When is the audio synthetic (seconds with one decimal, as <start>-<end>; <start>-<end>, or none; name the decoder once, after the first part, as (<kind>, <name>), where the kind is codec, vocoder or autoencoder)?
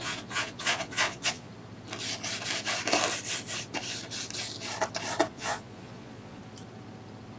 0.0-1.5 (vocoder, Vocos); 5.3-6.4